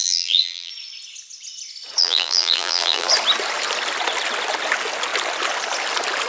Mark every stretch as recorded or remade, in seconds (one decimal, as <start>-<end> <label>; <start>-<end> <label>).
0.0-0.7 remade; 0.7-2.0 recorded; 2.0-3.1 remade; 3.1-6.3 recorded